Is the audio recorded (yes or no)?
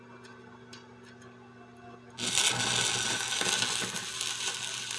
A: yes